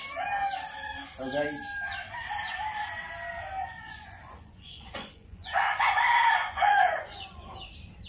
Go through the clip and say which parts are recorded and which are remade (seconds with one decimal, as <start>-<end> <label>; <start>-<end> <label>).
0.0-3.6 recorded; 3.6-6.0 remade; 6.0-6.4 recorded; 6.4-7.5 remade; 7.5-8.1 recorded